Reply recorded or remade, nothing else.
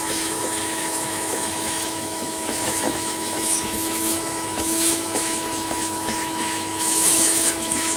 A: remade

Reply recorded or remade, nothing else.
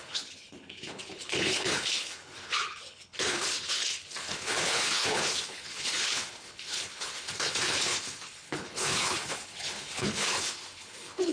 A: remade